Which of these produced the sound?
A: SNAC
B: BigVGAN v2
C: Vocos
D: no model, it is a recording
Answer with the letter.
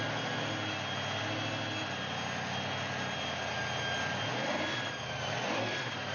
D